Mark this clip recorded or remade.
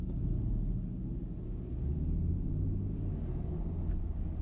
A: recorded